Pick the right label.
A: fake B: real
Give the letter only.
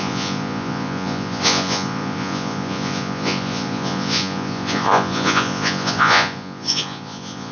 A